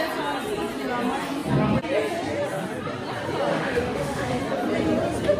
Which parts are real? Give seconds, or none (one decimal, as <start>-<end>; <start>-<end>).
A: 0.0-3.5; 4.4-5.4